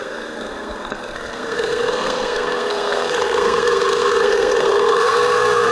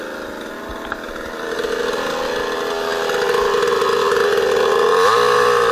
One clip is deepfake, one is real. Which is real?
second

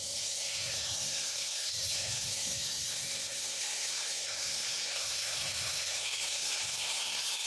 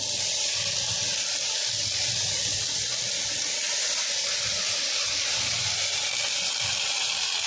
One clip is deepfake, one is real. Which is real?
second